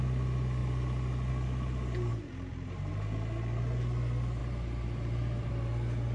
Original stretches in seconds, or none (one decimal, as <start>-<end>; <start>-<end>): 0.0-2.1; 2.9-4.4; 5.5-6.1